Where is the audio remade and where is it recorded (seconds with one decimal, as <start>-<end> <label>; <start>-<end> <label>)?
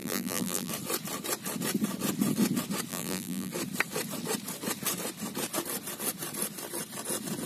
0.0-0.7 remade; 0.7-2.9 recorded; 2.9-3.5 remade; 3.5-7.5 recorded